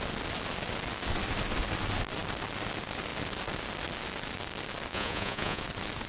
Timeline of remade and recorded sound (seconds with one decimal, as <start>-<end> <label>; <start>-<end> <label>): 0.0-4.9 recorded; 4.9-5.6 remade; 5.6-6.1 recorded